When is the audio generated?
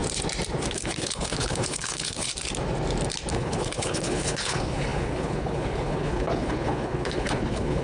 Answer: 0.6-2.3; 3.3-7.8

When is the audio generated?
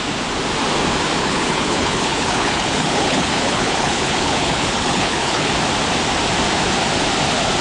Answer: 1.2-5.5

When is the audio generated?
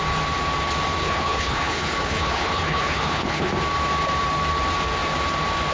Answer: 1.0-3.5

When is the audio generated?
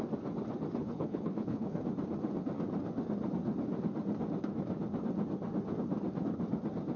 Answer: 0.8-1.8